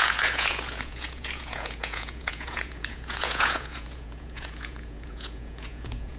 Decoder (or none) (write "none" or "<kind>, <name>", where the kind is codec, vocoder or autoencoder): vocoder, Vocos